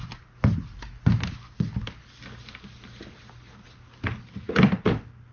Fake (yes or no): no